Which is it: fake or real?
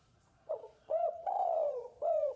fake